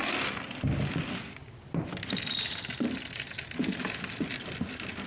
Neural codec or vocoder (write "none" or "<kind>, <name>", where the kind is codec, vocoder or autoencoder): none